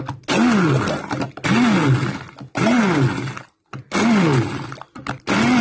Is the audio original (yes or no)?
yes